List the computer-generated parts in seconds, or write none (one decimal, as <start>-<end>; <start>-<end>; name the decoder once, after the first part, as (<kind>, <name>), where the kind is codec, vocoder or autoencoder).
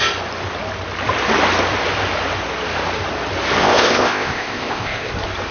3.6-5.1 (codec, ZipCodec)